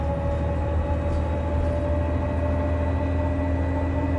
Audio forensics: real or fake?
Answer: real